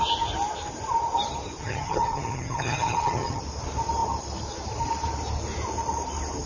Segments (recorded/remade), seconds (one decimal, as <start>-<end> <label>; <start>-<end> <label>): 0.0-1.6 recorded; 1.6-3.4 remade; 3.4-6.5 recorded